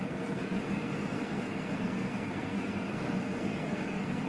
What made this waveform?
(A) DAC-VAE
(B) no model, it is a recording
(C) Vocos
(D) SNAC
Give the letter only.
D